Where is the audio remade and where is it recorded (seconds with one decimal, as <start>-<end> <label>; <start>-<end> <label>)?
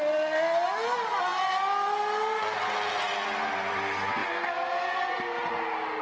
0.0-6.0 recorded